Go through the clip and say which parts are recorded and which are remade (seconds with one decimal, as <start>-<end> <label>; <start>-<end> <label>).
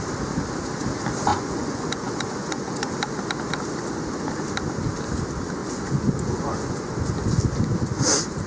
0.0-1.3 recorded; 1.3-2.9 remade; 2.9-5.6 recorded; 5.6-6.9 remade; 6.9-8.5 recorded